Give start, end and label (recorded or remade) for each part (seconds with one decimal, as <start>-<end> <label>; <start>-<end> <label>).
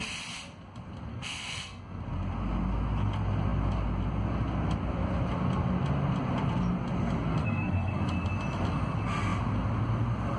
0.0-1.1 recorded; 1.1-2.0 remade; 2.0-7.4 recorded; 7.4-8.0 remade; 8.0-10.4 recorded